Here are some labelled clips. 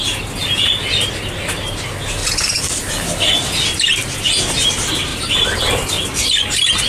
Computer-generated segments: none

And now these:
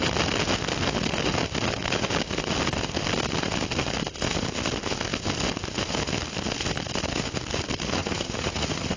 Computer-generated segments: 8.0-9.0 (vocoder, Vocos)

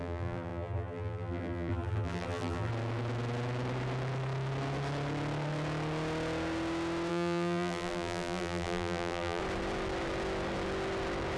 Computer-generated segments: 0.0-2.7 (vocoder, BigVGAN v2); 7.1-9.4

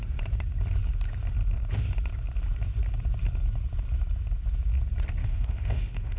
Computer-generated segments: 5.2-6.2 (autoencoder, DAC-VAE)